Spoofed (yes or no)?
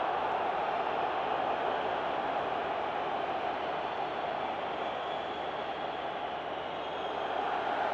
no